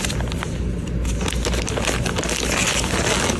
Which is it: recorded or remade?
recorded